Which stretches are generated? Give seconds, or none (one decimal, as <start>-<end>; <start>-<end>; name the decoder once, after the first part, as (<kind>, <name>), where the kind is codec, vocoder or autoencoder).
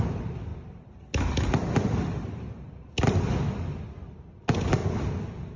0.5-2.9 (vocoder, BigVGAN v2); 4.8-5.6